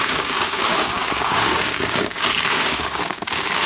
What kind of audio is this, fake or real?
fake